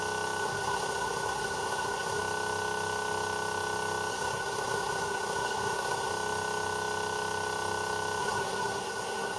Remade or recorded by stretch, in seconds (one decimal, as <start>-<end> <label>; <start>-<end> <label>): 0.0-0.4 recorded; 0.4-2.2 remade; 2.2-4.1 recorded; 4.1-6.1 remade; 6.1-8.2 recorded; 8.2-9.4 remade